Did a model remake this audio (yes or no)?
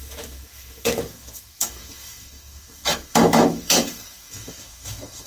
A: yes